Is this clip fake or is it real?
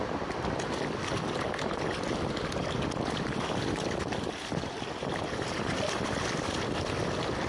real